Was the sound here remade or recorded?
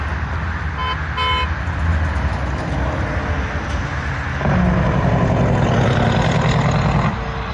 recorded